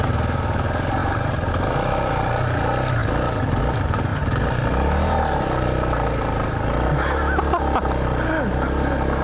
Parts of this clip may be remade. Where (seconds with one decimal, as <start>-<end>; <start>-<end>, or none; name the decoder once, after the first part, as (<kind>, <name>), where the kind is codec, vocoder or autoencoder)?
1.0-1.5 (vocoder, BigVGAN v2); 4.1-7.4